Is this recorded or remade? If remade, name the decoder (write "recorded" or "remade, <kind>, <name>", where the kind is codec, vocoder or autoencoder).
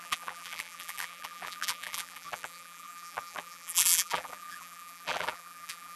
remade, vocoder, BigVGAN v2